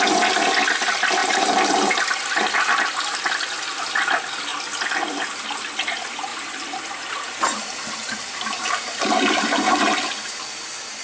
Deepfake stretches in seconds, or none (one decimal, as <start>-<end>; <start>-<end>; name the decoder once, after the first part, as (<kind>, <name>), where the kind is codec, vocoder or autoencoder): 1.2-1.9 (vocoder, BigVGAN v2); 6.3-10.4